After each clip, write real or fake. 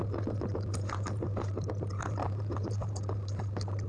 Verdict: real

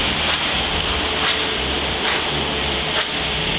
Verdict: real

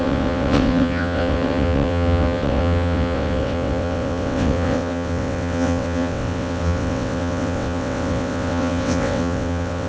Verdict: fake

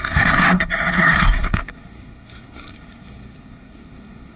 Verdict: fake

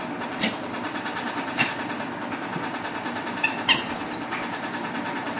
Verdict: real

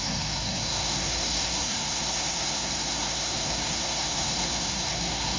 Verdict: fake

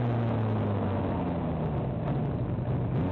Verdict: real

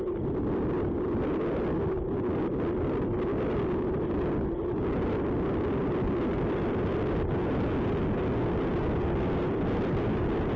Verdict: real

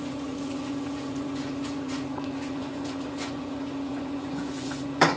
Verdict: fake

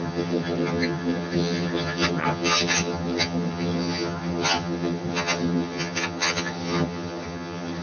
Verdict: fake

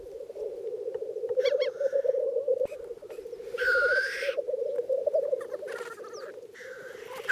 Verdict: real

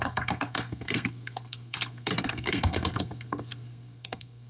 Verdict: fake